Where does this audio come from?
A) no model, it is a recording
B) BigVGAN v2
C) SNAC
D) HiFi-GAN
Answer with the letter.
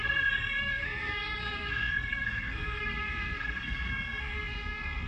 C